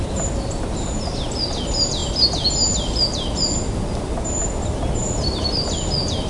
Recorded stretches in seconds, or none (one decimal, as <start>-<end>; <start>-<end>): 0.0-6.3